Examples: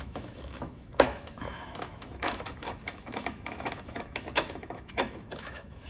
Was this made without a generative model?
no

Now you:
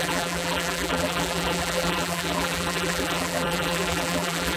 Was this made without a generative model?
no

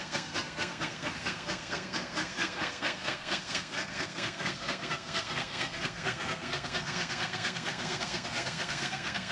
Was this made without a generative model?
no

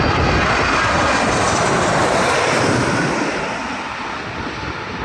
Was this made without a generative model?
yes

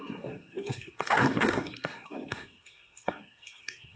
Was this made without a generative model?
no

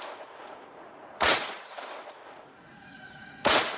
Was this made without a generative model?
no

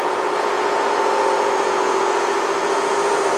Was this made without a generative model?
no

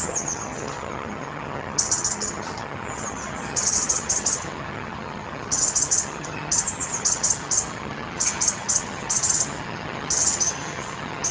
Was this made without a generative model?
no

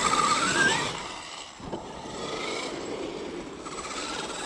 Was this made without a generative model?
no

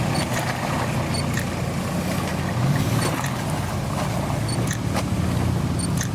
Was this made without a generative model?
yes